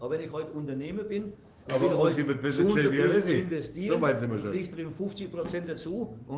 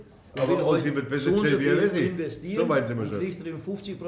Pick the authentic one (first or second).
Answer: second